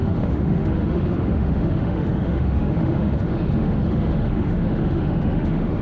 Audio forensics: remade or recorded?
remade